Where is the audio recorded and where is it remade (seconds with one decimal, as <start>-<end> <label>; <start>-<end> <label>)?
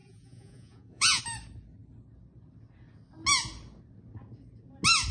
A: 0.0-1.2 remade; 1.2-5.1 recorded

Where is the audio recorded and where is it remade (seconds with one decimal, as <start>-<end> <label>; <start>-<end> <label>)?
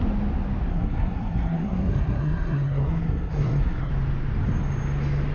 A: 0.0-0.7 recorded; 0.7-3.9 remade; 3.9-5.3 recorded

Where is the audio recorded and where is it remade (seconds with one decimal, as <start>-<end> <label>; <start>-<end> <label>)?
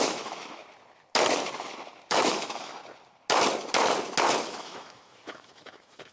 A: 0.0-0.6 remade; 0.6-2.1 recorded; 2.1-2.8 remade; 2.8-4.4 recorded; 4.4-6.1 remade